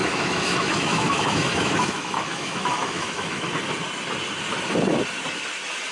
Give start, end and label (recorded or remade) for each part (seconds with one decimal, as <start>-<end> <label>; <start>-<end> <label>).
0.0-3.5 remade; 3.5-5.9 recorded